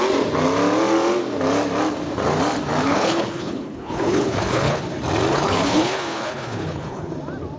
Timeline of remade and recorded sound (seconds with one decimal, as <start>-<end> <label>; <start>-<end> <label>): 0.0-2.8 recorded; 2.8-4.8 remade; 4.8-5.3 recorded; 5.3-7.1 remade; 7.1-7.6 recorded